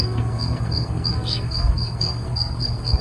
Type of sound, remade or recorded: remade